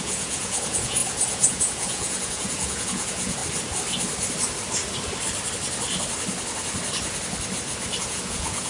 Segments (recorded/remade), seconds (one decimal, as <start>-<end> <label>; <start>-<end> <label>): 0.0-3.4 remade; 3.4-8.0 recorded; 8.0-8.7 remade

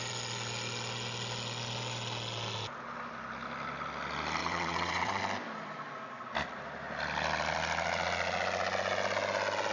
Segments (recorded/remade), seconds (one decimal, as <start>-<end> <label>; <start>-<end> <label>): 0.0-4.4 recorded; 4.4-5.2 remade; 5.2-9.7 recorded

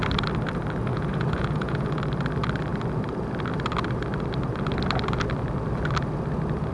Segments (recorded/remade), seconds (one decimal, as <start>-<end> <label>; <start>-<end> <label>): 0.0-0.9 recorded; 0.9-2.0 remade; 2.0-6.7 recorded

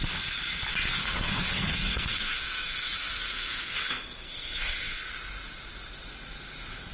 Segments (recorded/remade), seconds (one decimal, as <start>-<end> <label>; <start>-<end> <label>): 0.0-1.0 recorded; 1.0-5.1 remade; 5.1-6.9 recorded